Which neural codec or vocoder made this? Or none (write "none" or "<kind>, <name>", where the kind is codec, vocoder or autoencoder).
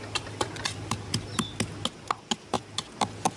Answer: none